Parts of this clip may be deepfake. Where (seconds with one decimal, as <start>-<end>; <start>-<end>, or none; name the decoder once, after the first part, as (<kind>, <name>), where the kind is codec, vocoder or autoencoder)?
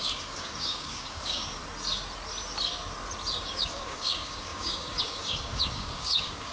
0.0-1.6 (codec, DAC); 3.4-6.5